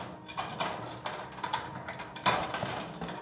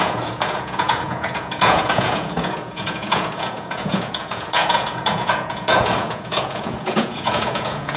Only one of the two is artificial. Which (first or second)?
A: second